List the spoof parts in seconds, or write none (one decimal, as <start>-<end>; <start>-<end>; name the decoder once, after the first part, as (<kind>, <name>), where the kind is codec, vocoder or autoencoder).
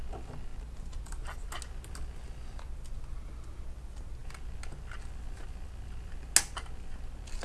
none